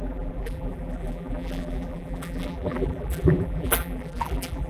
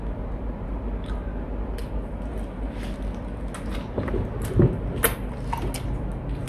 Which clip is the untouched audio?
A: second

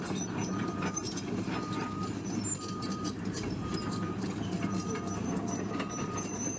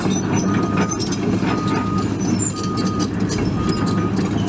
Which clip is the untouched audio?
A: second